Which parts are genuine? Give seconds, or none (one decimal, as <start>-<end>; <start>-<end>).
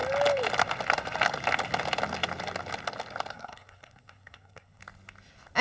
0.0-3.3; 4.8-5.6